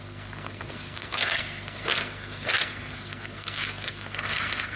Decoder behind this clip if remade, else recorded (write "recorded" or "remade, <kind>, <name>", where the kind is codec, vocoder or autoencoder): remade, codec, SNAC